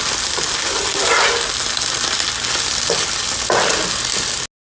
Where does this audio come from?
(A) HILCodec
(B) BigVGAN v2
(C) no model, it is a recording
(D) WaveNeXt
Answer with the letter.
C